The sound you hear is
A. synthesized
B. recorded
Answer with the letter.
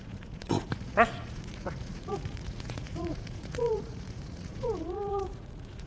A